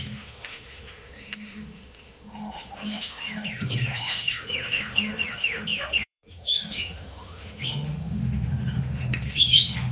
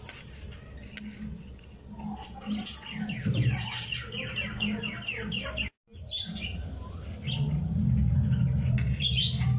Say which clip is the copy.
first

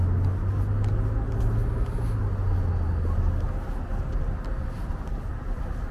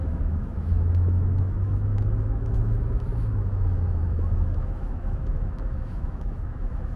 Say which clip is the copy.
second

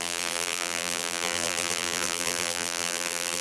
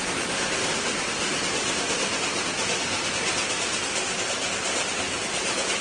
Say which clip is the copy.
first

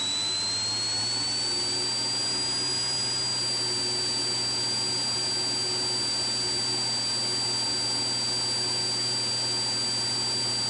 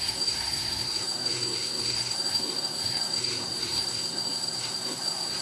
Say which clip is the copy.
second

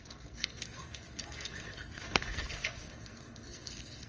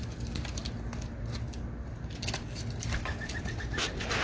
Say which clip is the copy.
first